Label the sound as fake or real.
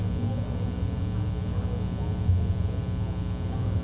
real